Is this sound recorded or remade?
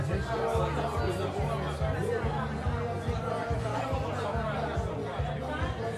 recorded